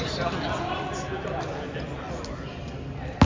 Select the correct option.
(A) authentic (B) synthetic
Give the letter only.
A